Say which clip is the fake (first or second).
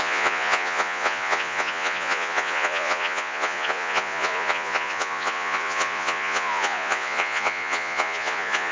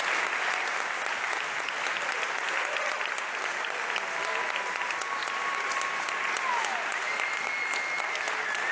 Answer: first